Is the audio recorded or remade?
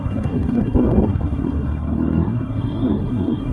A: remade